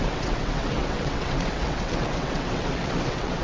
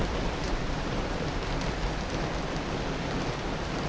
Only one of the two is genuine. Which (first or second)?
second